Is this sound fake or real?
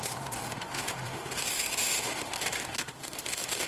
fake